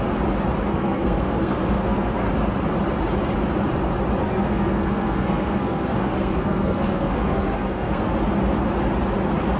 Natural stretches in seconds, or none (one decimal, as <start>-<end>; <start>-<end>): 0.0-0.7; 2.3-4.2; 8.1-9.6